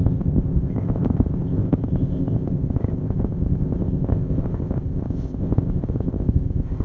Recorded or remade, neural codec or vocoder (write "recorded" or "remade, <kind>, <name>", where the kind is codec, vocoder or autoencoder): remade, codec, ZipCodec